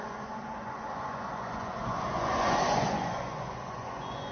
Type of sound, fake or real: fake